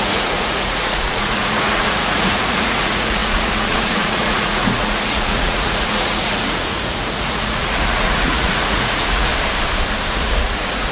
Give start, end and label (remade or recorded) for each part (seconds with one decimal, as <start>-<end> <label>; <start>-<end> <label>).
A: 0.0-9.3 remade; 9.3-10.1 recorded; 10.1-10.9 remade